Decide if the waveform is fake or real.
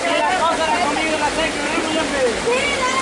real